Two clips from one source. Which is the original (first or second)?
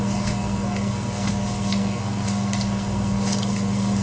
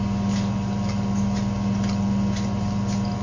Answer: second